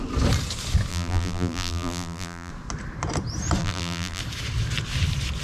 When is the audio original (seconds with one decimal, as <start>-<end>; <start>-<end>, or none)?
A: 0.0-0.9; 2.5-3.6; 4.2-5.4